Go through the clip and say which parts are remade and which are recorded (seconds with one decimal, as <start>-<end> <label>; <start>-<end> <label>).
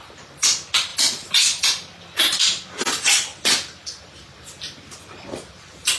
0.0-6.0 recorded